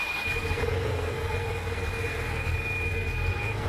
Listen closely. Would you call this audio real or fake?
fake